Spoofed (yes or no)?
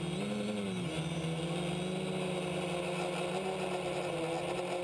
no